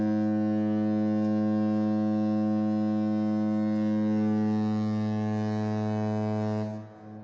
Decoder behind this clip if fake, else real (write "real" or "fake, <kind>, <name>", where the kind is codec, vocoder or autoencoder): real